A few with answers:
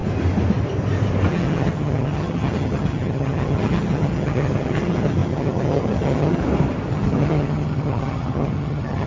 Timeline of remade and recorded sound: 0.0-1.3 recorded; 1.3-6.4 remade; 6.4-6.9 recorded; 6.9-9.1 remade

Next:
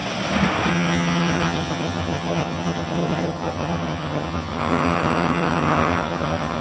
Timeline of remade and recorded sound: 0.0-0.7 recorded; 0.7-6.6 remade

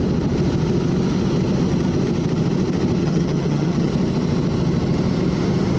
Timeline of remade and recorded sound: 0.0-3.0 recorded; 3.0-3.9 remade; 3.9-5.8 recorded